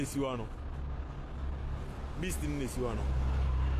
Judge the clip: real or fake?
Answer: real